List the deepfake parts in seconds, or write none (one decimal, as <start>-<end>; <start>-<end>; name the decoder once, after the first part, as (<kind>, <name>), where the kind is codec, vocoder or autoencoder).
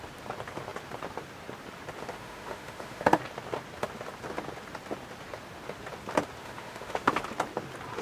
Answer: 2.1-3.2 (autoencoder, DAC-VAE); 6.4-7.2